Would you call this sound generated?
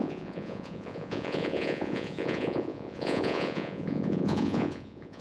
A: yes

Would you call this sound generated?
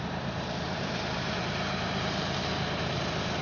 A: yes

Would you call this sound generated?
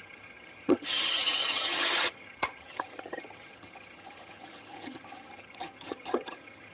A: yes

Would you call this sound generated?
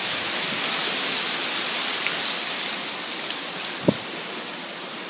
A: no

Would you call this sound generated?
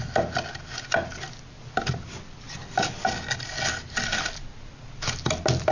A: no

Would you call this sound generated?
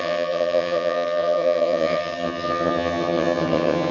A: yes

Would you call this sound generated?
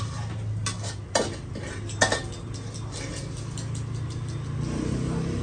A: no